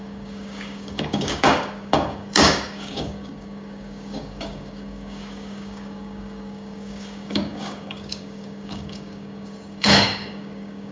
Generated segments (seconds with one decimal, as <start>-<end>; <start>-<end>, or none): 0.0-10.9